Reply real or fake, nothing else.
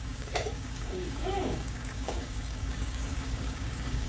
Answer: fake